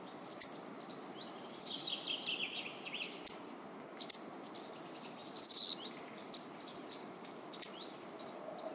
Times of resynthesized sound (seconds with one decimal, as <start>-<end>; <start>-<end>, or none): none